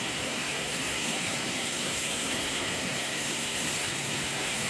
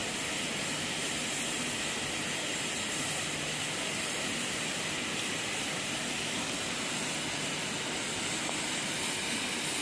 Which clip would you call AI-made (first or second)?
first